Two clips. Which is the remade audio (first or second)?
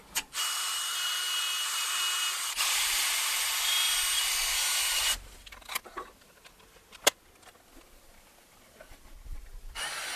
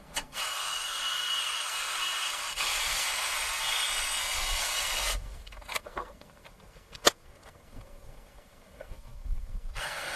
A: second